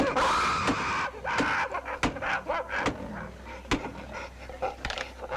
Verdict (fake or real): real